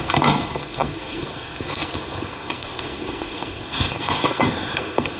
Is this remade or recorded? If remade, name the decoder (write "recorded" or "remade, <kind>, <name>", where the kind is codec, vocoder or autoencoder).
remade, codec, SNAC